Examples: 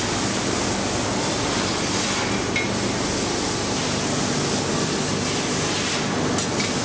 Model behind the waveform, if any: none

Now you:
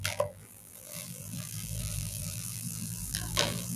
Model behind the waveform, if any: vocoder, BigVGAN v2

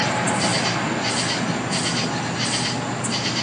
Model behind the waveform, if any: none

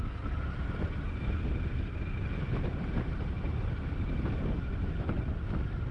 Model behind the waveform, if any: none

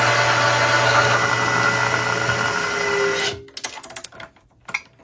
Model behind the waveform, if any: none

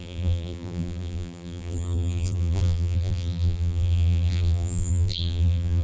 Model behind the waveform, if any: vocoder, BigVGAN v2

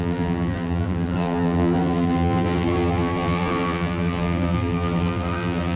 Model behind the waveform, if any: vocoder, BigVGAN v2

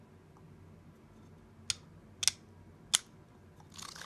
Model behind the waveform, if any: none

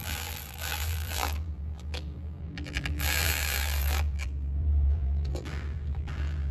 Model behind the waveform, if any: vocoder, BigVGAN v2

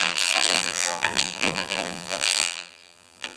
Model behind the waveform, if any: vocoder, BigVGAN v2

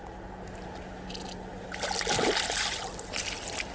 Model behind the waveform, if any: none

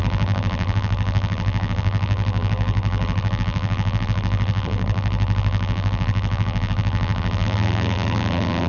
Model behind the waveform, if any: vocoder, BigVGAN v2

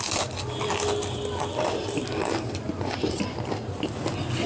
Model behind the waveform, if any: vocoder, BigVGAN v2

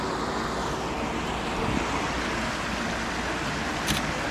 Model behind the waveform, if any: none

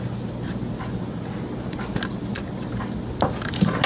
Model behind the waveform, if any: none